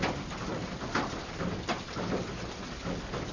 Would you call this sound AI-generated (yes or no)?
no